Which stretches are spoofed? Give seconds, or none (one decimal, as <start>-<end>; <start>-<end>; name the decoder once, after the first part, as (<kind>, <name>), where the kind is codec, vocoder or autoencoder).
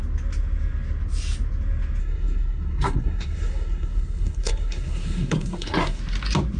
2.0-6.0 (codec, SNAC)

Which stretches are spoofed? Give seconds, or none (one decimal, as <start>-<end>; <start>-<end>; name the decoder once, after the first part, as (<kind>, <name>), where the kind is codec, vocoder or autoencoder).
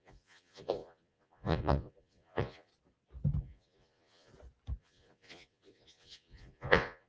0.0-2.7 (vocoder, Vocos); 3.4-4.3; 4.8-7.1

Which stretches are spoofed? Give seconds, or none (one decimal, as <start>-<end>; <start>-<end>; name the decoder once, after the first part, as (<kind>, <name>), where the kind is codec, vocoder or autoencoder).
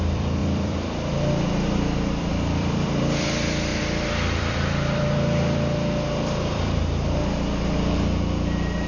0.0-8.9 (vocoder, BigVGAN v2)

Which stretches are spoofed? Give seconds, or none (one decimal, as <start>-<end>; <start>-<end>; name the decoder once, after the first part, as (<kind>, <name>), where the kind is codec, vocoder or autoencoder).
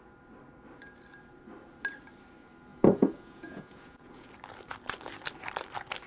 2.7-4.3 (vocoder, Vocos)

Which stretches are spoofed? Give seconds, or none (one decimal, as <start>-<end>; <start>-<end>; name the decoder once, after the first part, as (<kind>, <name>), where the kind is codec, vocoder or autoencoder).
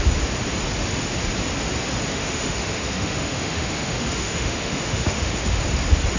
2.1-5.6 (autoencoder, DAC-VAE)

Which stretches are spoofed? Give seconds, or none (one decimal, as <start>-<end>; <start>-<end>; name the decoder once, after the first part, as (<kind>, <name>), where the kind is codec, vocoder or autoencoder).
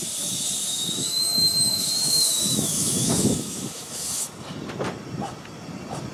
0.6-4.3 (autoencoder, DAC-VAE)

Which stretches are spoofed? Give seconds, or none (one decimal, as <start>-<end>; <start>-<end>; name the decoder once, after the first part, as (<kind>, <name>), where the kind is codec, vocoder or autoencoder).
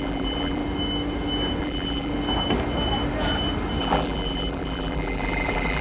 0.0-0.6 (vocoder, BigVGAN v2); 1.6-2.1; 3.8-5.8